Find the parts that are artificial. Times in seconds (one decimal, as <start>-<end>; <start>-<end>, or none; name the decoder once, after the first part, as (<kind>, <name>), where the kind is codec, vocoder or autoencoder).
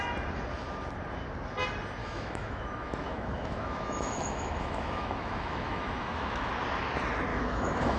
2.0-6.5 (autoencoder, DAC-VAE); 7.3-8.0